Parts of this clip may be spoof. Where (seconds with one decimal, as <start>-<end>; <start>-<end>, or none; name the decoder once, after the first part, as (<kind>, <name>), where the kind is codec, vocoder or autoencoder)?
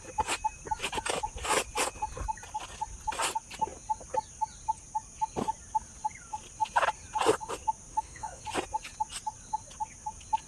7.9-8.4 (autoencoder, DAC-VAE)